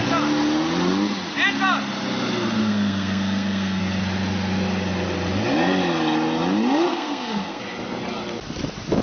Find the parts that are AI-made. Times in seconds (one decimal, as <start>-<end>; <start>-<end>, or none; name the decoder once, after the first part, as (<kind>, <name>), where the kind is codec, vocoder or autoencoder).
2.6-3.8 (codec, SNAC); 6.9-7.6